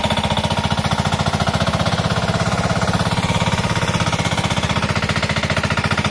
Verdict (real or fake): real